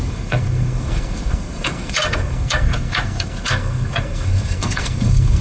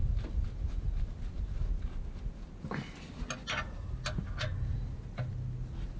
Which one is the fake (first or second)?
first